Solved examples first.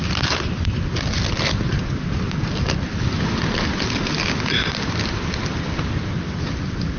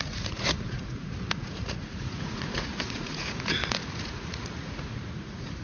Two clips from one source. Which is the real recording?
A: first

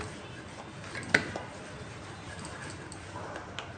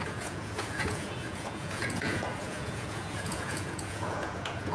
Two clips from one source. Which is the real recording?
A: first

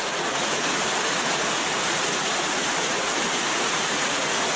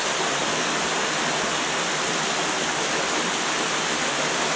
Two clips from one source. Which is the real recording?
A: second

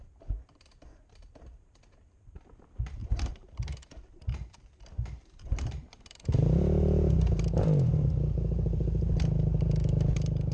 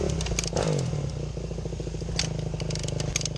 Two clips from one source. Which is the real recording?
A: second